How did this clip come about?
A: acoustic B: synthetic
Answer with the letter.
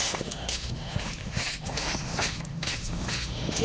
B